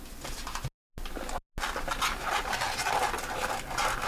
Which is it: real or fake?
real